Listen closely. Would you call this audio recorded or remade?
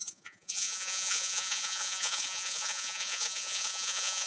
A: remade